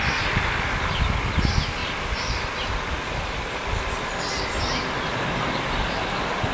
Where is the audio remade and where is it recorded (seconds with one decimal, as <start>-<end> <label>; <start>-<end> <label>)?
0.0-6.5 recorded